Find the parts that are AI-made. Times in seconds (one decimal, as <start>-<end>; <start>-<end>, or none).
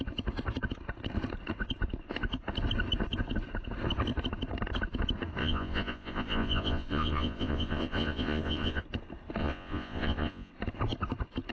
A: 5.4-8.8; 9.4-10.5